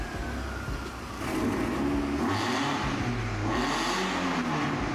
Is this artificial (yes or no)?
no